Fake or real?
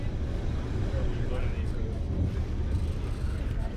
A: real